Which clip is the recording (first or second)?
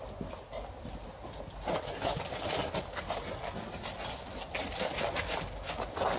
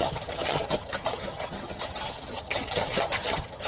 first